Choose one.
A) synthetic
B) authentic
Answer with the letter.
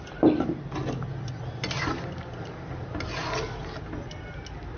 B